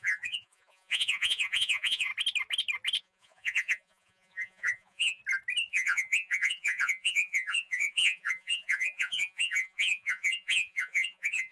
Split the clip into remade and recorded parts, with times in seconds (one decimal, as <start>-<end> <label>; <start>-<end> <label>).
0.0-2.1 remade; 2.1-3.0 recorded; 3.0-5.2 remade; 5.2-5.7 recorded; 5.7-11.5 remade